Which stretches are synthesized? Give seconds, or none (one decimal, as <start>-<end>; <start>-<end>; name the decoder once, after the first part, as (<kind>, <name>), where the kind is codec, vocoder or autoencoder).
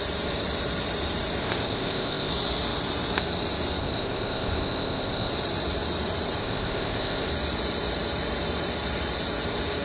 1.4-2.3 (codec, ZipCodec); 3.8-5.3; 6.4-7.3